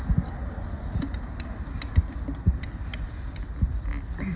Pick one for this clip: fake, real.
real